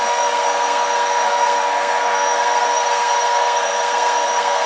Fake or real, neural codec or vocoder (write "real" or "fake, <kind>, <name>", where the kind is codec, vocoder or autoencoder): fake, codec, SNAC